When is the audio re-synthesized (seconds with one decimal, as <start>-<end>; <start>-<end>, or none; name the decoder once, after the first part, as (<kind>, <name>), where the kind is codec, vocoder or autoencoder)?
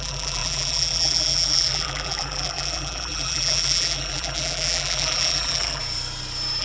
0.0-5.8 (vocoder, BigVGAN v2)